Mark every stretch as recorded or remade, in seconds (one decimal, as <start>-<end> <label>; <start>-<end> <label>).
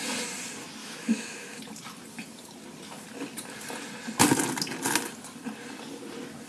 0.0-0.8 recorded; 0.8-1.6 remade; 1.6-6.5 recorded